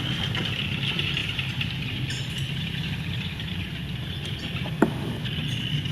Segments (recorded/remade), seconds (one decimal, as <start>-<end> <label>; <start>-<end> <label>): 0.0-5.9 recorded